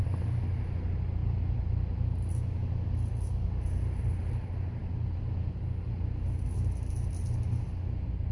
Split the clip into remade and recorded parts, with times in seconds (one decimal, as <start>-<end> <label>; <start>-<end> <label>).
0.0-8.3 recorded